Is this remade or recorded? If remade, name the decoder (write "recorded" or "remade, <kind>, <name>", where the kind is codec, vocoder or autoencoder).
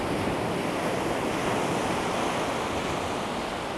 recorded